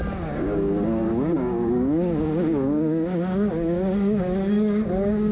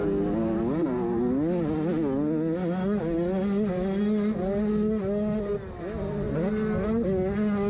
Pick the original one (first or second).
second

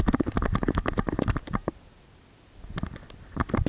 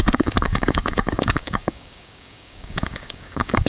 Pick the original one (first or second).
first